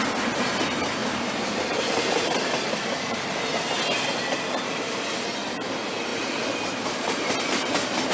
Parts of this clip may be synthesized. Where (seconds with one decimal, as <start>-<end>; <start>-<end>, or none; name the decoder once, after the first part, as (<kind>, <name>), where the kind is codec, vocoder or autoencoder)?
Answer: 1.0-3.6 (vocoder, BigVGAN v2); 6.1-8.1